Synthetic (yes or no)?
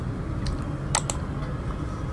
no